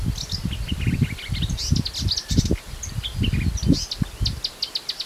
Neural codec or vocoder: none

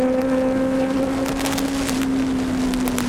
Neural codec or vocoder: none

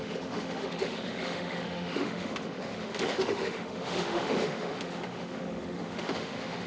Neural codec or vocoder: autoencoder, DAC-VAE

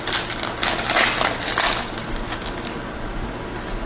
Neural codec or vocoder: none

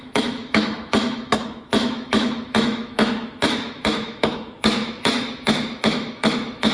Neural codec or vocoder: autoencoder, DAC-VAE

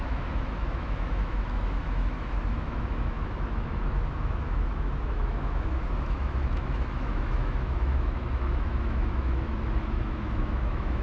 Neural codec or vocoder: autoencoder, DAC-VAE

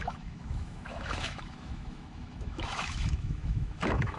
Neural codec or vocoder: autoencoder, DAC-VAE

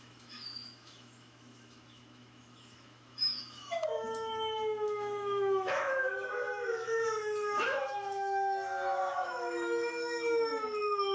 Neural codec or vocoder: autoencoder, DAC-VAE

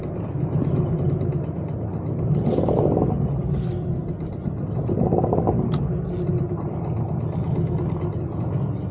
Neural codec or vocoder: none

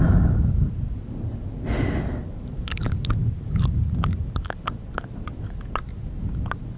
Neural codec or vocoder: none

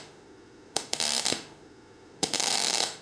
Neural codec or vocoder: autoencoder, DAC-VAE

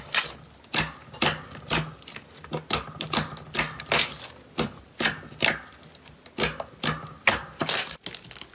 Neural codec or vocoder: none